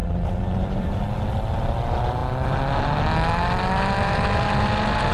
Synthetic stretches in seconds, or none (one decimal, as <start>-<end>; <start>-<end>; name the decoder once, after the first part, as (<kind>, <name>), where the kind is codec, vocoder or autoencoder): 0.0-1.0 (vocoder, BigVGAN v2)